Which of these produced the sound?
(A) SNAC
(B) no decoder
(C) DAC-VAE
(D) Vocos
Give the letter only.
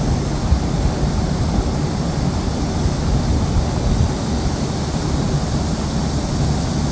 B